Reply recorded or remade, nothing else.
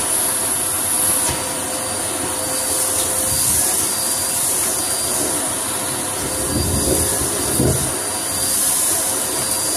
recorded